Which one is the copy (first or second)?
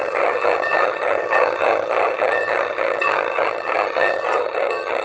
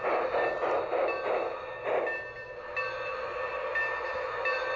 first